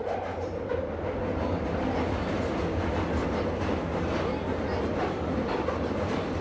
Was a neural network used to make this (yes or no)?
no